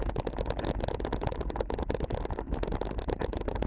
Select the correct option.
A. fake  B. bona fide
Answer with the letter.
B